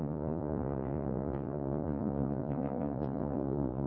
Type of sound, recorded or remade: remade